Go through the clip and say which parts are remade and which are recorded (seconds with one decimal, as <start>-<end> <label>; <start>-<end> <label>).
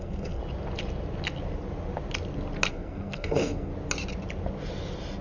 0.0-0.4 remade; 0.4-2.7 recorded; 2.7-3.7 remade; 3.7-5.2 recorded